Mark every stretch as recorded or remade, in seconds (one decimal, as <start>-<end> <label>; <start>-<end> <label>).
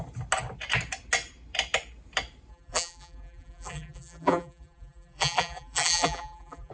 0.0-2.5 recorded; 2.5-6.7 remade